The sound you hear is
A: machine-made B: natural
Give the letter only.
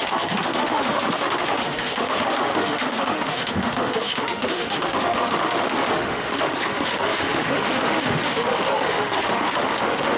A